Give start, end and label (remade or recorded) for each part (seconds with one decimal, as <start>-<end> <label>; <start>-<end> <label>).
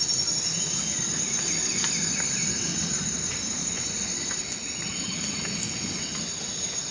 0.0-3.6 recorded; 3.6-4.1 remade; 4.1-6.9 recorded